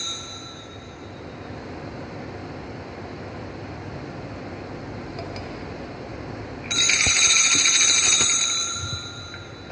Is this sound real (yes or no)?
yes